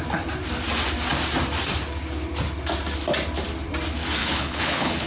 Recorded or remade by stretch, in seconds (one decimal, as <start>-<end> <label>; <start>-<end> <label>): 0.0-4.2 recorded; 4.2-5.1 remade